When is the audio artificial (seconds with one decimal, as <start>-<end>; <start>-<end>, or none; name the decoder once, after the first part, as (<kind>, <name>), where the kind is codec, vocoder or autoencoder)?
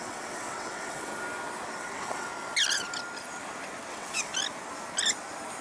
0.0-1.1 (vocoder, WaveNeXt); 1.8-2.3; 3.9-4.3